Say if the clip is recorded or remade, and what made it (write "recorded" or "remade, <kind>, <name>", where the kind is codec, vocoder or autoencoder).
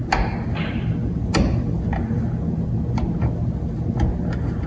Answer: recorded